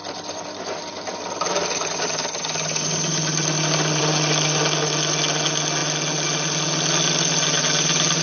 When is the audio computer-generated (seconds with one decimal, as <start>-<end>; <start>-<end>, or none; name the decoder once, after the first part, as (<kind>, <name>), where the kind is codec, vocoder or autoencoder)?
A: none